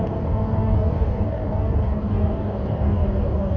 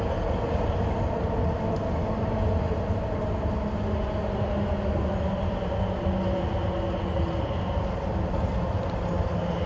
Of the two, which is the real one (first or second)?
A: second